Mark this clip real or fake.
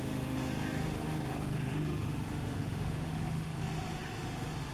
fake